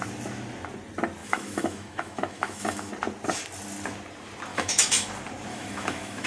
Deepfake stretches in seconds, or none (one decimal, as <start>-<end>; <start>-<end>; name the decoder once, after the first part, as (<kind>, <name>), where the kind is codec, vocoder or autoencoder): 1.2-2.9 (autoencoder, DAC-VAE); 4.5-5.1; 5.5-6.3